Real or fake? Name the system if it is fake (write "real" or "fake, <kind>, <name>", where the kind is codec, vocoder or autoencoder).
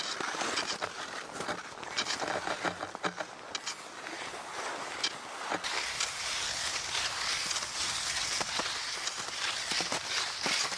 real